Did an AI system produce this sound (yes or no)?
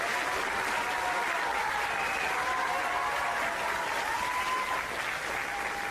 no